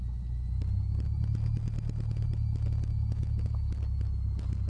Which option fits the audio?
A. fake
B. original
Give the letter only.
B